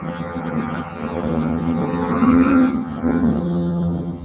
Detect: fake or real fake